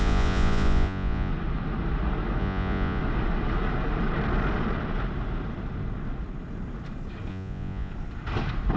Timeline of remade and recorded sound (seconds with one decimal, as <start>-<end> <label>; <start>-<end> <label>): 0.0-1.3 remade; 1.3-2.4 recorded; 2.4-3.0 remade; 3.0-7.3 recorded; 7.3-7.9 remade; 7.9-8.8 recorded